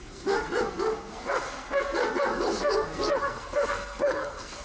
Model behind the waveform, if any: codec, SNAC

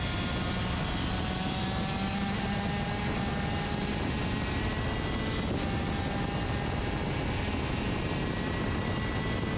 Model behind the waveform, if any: none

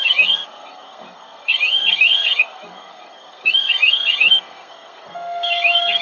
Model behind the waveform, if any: codec, SNAC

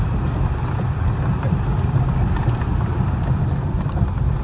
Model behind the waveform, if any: none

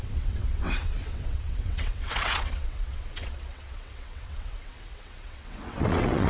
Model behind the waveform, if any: vocoder, WaveNeXt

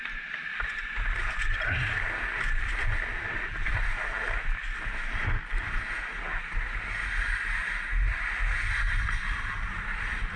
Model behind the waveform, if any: none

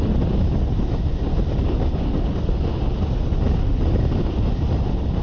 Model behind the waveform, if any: none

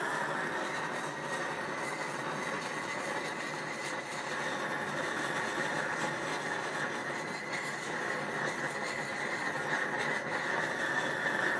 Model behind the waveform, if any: none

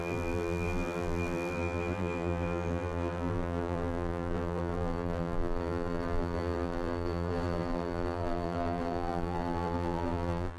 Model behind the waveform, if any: vocoder, BigVGAN v2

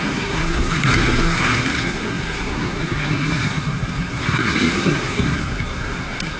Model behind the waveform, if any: codec, SNAC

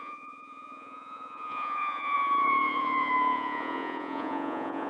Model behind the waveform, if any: vocoder, Vocos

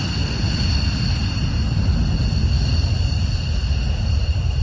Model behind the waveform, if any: none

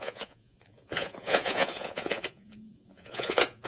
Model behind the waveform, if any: vocoder, Vocos